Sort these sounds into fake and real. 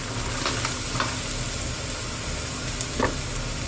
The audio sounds real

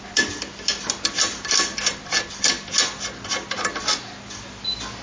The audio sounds real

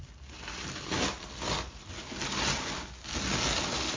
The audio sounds real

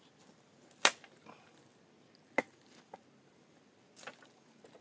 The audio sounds real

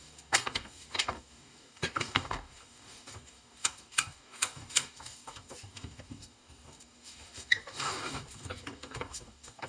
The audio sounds fake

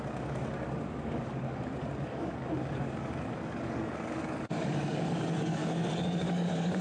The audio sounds fake